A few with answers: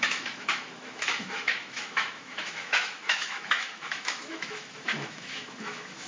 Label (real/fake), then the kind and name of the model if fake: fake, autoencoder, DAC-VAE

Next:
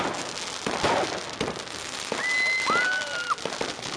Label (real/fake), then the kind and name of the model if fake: real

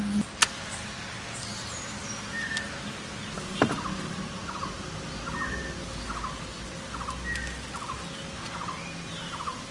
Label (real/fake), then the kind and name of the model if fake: real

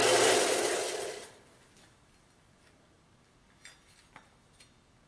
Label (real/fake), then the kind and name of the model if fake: real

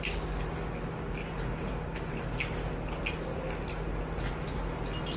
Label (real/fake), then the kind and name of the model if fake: real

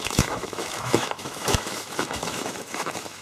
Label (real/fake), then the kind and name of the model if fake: fake, autoencoder, DAC-VAE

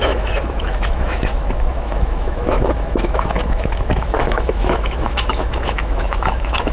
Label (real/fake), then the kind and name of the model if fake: fake, autoencoder, DAC-VAE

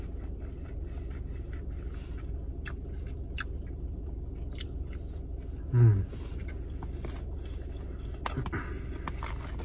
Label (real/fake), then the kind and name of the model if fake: real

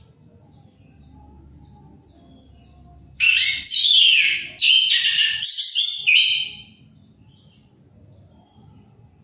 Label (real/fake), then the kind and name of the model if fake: real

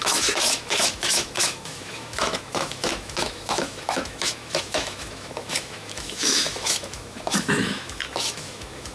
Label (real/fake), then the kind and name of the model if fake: fake, autoencoder, DAC-VAE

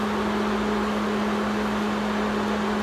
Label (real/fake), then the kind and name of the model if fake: real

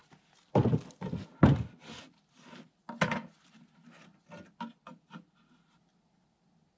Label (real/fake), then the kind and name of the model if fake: real